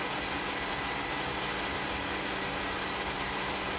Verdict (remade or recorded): recorded